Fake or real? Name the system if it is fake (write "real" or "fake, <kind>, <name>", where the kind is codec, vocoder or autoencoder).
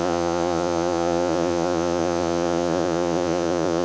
fake, vocoder, Vocos